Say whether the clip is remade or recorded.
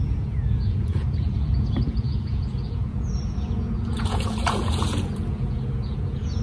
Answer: remade